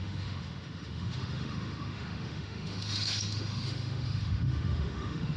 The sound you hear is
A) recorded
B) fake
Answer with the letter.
B